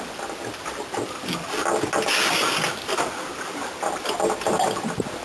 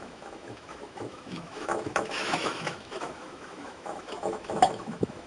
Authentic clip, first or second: first